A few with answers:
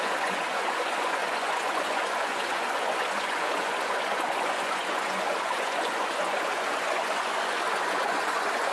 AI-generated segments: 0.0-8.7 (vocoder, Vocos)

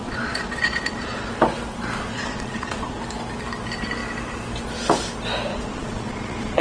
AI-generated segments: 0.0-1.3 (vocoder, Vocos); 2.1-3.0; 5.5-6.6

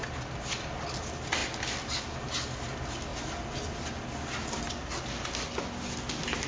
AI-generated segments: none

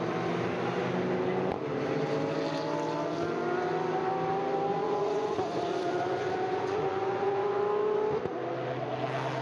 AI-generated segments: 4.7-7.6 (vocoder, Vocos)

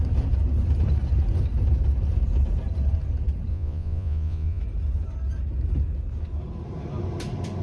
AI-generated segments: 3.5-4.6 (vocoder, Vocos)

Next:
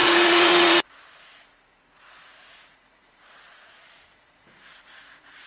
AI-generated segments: 0.0-5.5 (vocoder, Vocos)

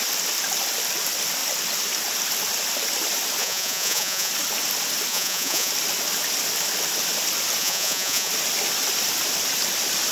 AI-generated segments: 3.4-4.3 (vocoder, Vocos); 5.1-5.7; 7.6-8.3